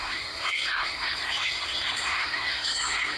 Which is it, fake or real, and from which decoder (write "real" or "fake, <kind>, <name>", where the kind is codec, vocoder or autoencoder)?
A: fake, codec, SNAC